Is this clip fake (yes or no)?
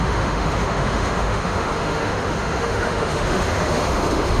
yes